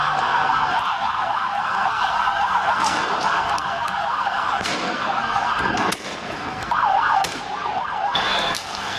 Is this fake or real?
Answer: fake